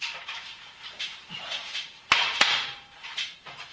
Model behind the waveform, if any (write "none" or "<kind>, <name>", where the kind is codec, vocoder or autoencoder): vocoder, BigVGAN v2